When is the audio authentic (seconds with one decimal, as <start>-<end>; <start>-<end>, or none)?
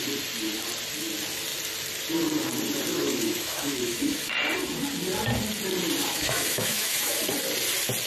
0.0-2.9; 4.3-6.0; 7.2-8.1